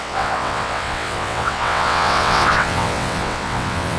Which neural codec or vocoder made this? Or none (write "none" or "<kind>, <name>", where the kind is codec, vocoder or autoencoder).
vocoder, WaveNeXt